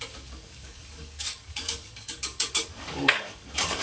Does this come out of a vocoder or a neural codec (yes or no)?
yes